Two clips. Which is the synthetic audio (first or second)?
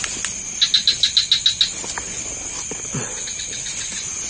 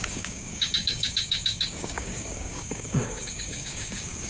second